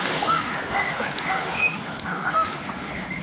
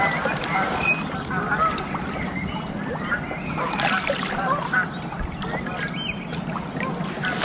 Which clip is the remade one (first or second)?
first